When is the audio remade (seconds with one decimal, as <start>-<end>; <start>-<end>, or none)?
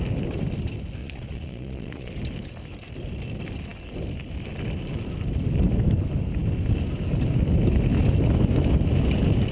1.0-2.1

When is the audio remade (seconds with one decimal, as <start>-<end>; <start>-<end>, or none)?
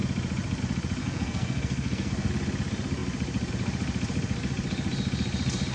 1.0-2.3